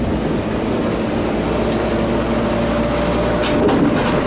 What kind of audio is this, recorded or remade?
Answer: recorded